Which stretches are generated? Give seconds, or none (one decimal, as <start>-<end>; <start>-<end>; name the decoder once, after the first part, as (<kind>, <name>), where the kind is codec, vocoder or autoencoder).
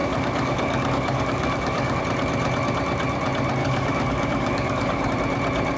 0.0-2.0 (codec, DAC); 3.6-5.1